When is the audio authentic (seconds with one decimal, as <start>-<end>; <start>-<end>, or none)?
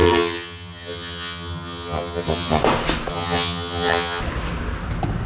2.6-3.1; 4.2-5.3